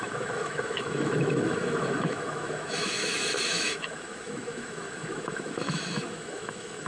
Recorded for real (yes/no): no